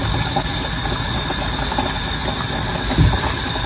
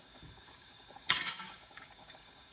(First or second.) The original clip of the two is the first